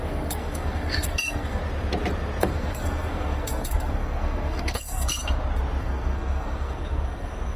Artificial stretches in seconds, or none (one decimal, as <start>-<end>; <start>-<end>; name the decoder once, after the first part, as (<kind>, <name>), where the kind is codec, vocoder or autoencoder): 0.0-1.6 (codec, SNAC); 2.4-5.2; 5.8-7.6